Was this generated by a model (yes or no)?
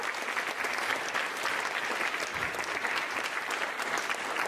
no